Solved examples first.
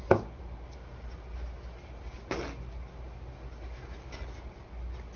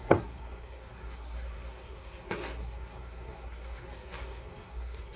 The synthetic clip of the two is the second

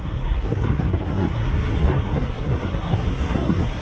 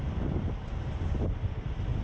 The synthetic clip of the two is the first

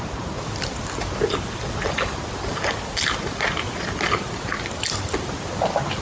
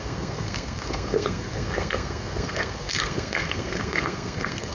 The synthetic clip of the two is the second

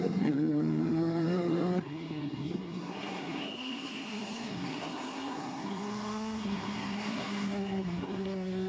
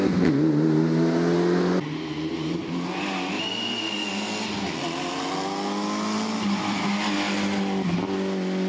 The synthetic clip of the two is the first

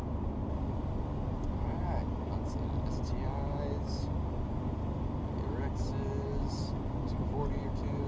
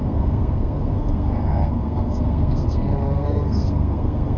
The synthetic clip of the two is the second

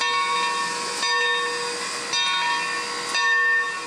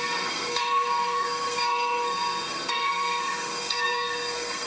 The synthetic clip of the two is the second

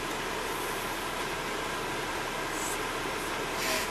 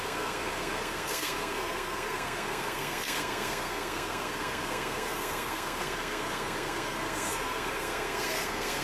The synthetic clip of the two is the second